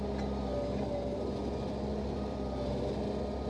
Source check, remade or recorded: recorded